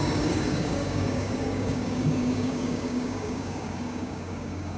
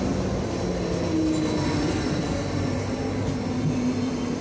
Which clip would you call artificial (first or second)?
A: first